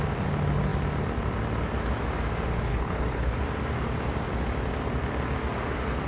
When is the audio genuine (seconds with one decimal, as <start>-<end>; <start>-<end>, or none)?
0.0-2.7; 3.4-6.1